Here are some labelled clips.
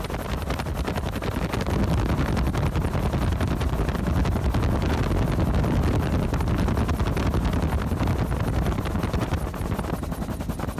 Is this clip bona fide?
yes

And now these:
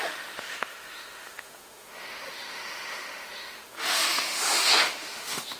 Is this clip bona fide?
no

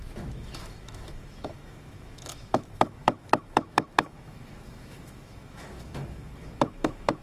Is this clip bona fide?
no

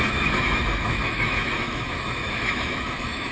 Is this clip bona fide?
no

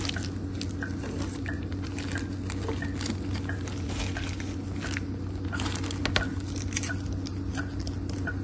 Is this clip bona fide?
yes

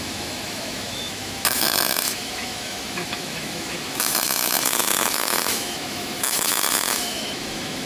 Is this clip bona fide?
no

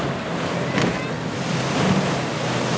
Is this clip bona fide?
yes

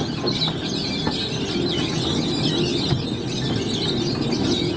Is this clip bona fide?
yes